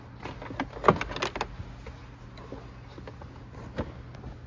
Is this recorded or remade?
recorded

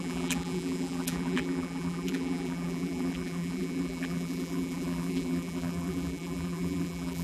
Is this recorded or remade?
remade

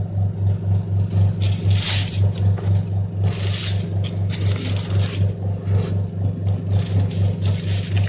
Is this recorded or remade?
recorded